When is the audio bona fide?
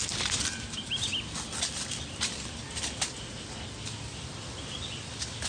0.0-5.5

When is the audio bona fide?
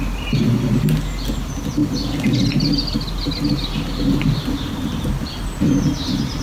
0.0-6.4